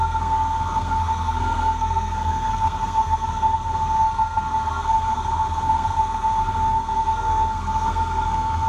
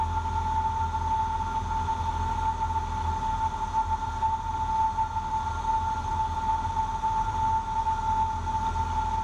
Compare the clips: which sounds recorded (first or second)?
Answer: second